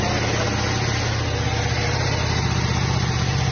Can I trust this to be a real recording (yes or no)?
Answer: yes